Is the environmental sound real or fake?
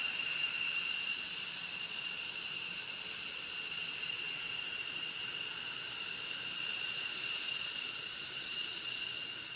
fake